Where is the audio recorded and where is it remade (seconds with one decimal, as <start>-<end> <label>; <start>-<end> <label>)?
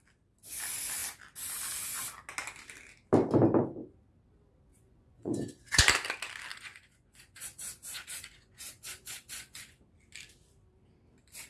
0.0-4.7 recorded; 4.7-5.8 remade; 5.8-6.5 recorded; 6.5-9.8 remade; 9.8-11.5 recorded